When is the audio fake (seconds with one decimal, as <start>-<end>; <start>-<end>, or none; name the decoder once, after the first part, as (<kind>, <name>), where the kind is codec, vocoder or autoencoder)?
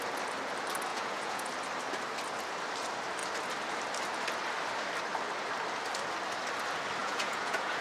0.9-1.5 (vocoder, Vocos); 7.0-7.8